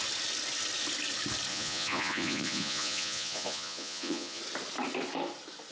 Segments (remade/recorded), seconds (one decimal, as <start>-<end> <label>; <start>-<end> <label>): 0.0-1.5 recorded; 1.5-4.4 remade; 4.4-5.7 recorded